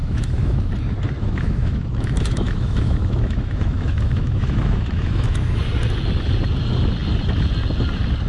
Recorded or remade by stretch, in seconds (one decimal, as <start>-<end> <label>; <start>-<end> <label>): 0.0-0.7 remade; 0.7-1.2 recorded; 1.2-5.6 remade; 5.6-8.3 recorded

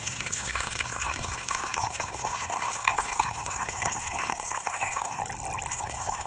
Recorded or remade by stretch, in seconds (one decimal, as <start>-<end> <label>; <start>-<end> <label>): 0.0-5.2 remade; 5.2-5.7 recorded; 5.7-6.3 remade